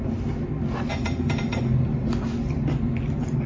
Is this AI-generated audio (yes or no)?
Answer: no